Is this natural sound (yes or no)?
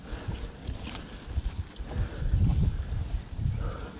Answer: yes